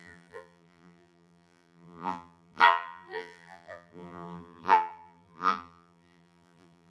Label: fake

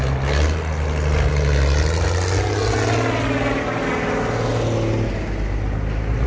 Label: real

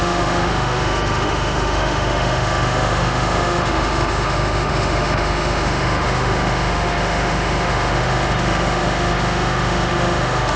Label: fake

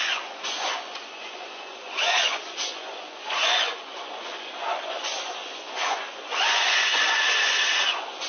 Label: fake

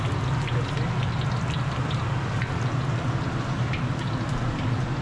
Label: real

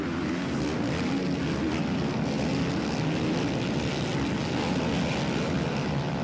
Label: real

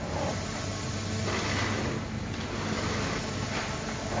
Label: real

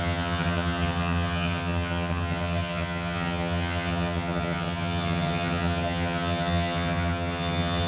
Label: fake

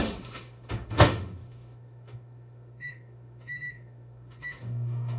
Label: fake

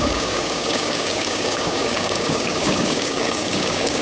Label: fake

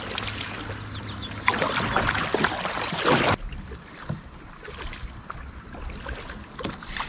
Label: real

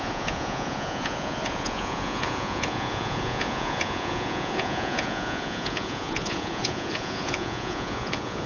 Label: fake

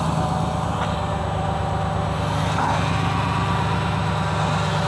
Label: real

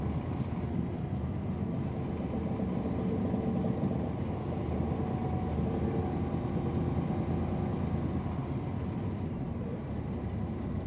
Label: real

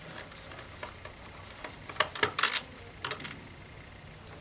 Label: real